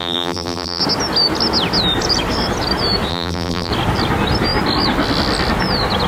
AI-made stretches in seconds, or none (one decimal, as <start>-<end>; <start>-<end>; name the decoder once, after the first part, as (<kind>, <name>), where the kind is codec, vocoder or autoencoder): 0.0-0.8 (vocoder, BigVGAN v2); 3.1-3.7